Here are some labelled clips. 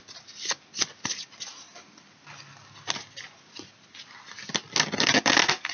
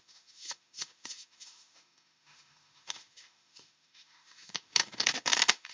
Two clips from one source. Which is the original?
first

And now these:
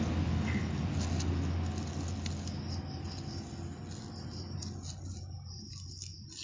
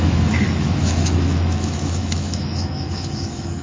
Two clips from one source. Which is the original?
first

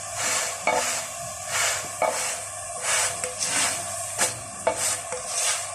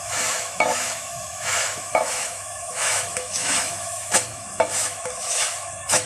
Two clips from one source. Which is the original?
first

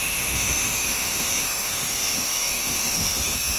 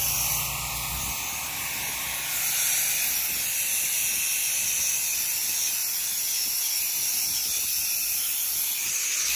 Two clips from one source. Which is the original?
second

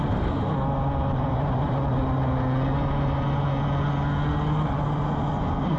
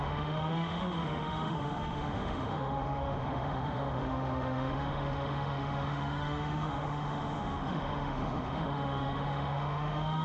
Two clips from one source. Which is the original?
first